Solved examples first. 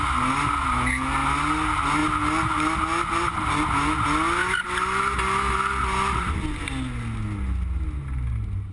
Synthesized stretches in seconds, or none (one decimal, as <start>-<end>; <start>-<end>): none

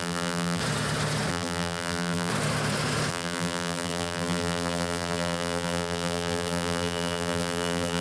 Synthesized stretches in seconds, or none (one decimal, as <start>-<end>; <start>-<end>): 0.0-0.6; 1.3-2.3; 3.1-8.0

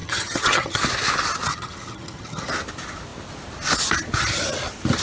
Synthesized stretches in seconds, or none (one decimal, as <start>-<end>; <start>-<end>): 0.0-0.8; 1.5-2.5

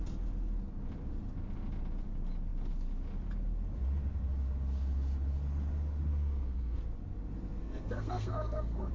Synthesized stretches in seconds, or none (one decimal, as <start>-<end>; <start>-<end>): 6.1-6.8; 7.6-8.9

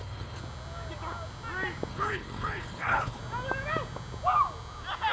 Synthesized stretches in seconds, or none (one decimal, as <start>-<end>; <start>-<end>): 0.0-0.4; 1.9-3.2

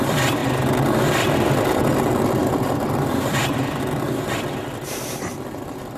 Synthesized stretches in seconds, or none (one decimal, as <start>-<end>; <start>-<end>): 0.0-0.4; 1.0-6.0

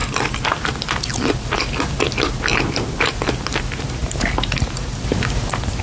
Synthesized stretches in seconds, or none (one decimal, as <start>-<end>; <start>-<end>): 0.0-2.0; 2.5-3.1; 4.0-5.8